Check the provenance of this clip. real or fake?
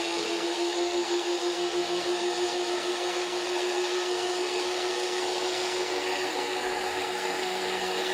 fake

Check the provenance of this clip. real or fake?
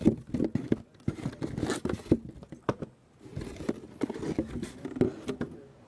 real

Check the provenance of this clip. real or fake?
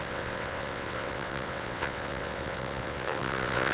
fake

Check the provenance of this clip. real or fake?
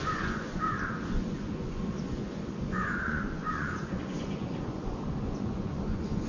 fake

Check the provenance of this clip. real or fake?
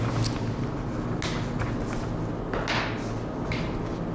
real